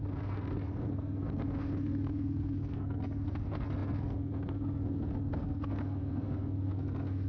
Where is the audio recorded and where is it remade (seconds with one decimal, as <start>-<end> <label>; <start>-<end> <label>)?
0.0-7.3 remade